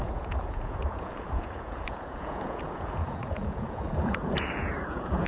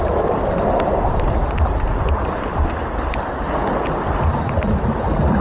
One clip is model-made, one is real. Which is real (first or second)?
second